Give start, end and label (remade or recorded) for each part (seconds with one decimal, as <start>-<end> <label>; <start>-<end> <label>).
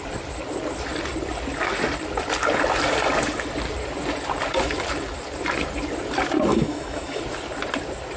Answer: 0.0-6.5 recorded; 6.5-7.2 remade; 7.2-8.2 recorded